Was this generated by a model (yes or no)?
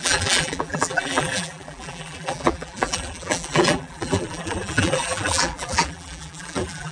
yes